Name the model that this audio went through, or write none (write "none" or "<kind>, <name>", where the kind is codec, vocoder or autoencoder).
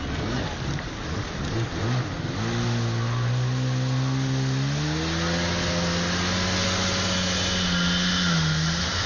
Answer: none